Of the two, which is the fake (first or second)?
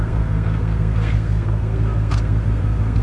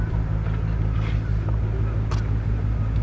first